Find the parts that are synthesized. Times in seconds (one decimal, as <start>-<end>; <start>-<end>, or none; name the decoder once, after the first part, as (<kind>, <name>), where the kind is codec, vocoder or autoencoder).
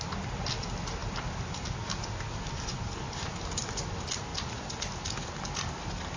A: none